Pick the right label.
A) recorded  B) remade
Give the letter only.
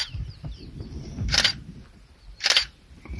B